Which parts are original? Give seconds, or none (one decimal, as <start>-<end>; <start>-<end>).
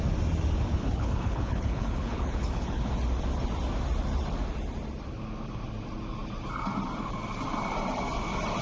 0.0-0.7; 2.9-8.6